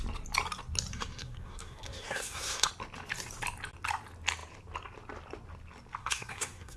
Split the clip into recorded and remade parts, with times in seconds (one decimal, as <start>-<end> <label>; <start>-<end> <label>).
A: 0.0-0.9 recorded; 0.9-2.7 remade; 2.7-6.0 recorded; 6.0-6.8 remade